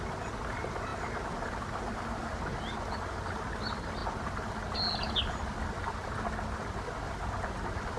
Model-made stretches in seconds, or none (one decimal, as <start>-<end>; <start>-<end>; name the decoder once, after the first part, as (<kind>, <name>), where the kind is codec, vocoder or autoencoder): none